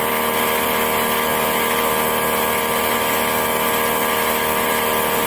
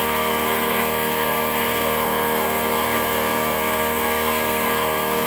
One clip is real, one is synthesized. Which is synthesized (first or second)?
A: second